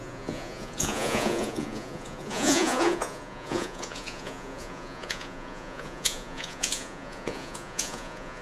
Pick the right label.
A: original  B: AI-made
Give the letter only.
B